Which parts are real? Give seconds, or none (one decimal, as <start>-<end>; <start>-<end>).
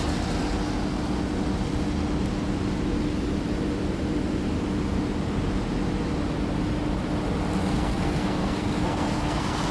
0.0-7.6